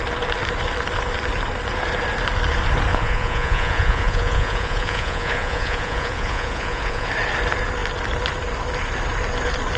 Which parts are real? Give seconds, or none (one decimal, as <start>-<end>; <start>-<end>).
0.0-2.9; 7.1-9.8